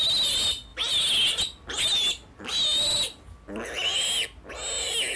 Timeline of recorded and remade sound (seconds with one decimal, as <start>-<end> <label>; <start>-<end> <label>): 0.0-5.2 recorded